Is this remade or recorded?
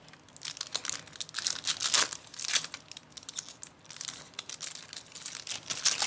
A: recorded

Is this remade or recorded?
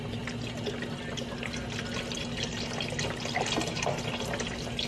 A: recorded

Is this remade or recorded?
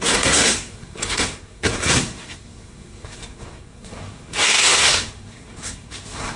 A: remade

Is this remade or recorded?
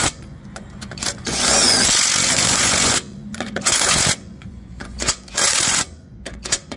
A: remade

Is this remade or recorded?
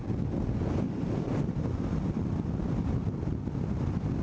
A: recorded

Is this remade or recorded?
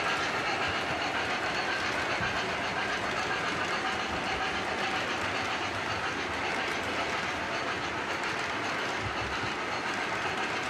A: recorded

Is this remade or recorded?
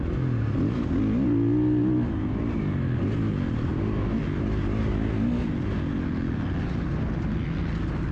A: recorded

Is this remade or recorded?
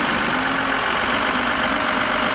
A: recorded